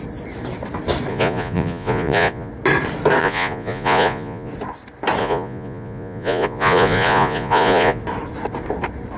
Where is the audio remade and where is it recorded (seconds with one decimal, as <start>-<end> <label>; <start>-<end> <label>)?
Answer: 0.0-1.1 recorded; 1.1-2.5 remade; 2.5-3.2 recorded; 3.2-4.5 remade; 4.5-5.2 recorded; 5.2-8.0 remade; 8.0-9.2 recorded